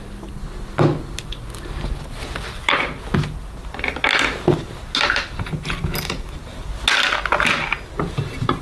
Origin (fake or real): real